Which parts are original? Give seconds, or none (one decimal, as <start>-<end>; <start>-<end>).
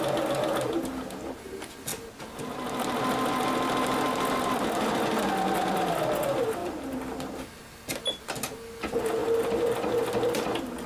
0.0-10.9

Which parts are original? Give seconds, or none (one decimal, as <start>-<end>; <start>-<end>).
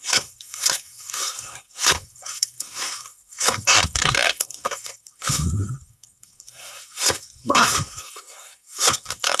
none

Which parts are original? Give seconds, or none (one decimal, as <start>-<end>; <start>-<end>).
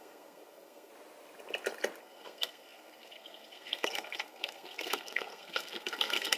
0.9-2.0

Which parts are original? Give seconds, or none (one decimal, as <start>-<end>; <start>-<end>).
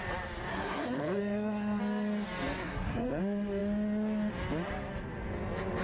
0.0-0.5; 1.8-2.6; 3.2-5.8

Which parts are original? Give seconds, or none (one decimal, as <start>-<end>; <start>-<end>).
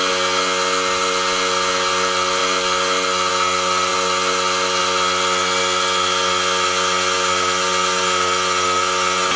0.0-9.4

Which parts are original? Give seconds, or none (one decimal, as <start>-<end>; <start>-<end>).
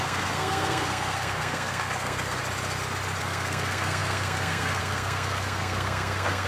2.4-3.2